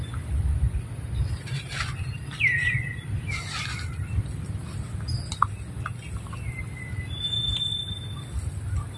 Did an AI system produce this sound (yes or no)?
no